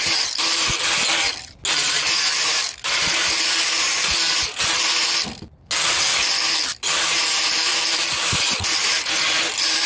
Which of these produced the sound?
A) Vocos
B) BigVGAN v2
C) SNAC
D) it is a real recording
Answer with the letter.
D